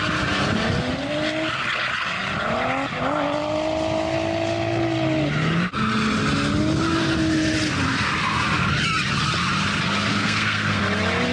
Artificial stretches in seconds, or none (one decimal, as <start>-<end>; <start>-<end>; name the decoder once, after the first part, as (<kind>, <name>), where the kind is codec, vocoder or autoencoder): 10.1-10.8 (codec, SNAC)